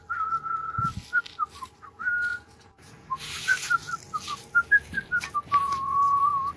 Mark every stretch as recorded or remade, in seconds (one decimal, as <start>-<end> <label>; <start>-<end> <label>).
0.0-2.3 recorded; 2.3-3.7 remade; 3.7-5.6 recorded; 5.6-6.6 remade